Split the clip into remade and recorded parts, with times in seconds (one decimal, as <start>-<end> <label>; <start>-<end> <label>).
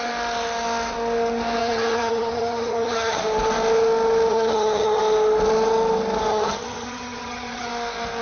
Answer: 0.0-1.6 recorded; 1.6-3.2 remade; 3.2-4.3 recorded; 4.3-5.0 remade; 5.0-6.3 recorded; 6.3-7.7 remade; 7.7-8.2 recorded